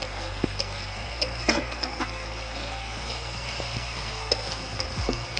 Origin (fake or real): fake